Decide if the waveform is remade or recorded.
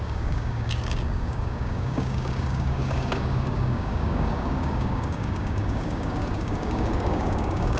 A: remade